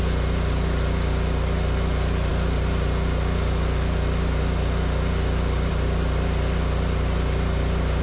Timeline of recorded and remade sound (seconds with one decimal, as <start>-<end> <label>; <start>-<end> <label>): 0.0-8.0 recorded